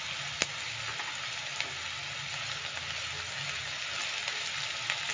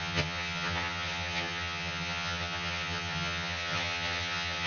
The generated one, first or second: second